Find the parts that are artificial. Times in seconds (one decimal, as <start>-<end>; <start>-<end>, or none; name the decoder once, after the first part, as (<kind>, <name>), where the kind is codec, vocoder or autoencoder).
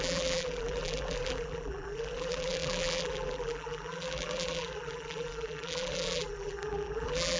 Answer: 0.0-7.4 (vocoder, BigVGAN v2)